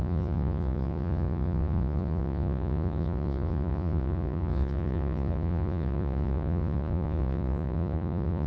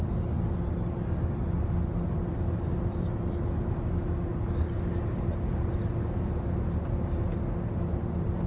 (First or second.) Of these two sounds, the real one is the second